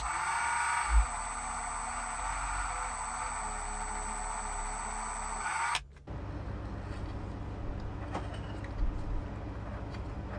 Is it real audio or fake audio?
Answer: real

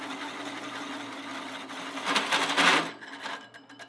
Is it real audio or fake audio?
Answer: real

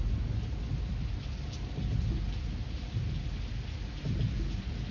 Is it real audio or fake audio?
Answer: real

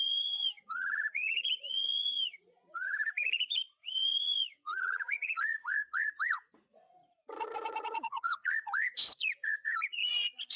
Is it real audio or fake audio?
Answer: fake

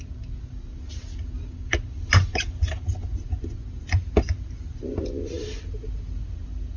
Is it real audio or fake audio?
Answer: real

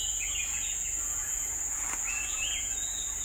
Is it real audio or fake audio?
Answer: fake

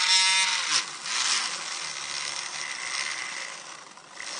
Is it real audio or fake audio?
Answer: real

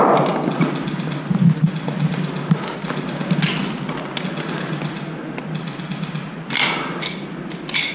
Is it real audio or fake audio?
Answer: real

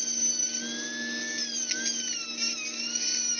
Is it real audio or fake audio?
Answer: real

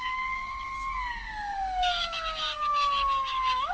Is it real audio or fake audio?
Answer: fake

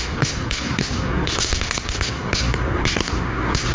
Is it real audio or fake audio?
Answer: fake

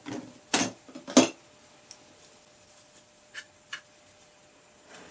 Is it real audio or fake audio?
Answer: real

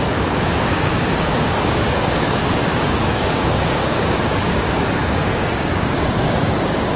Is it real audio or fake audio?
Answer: fake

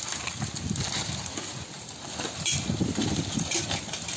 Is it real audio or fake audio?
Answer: real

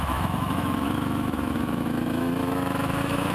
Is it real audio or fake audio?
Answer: fake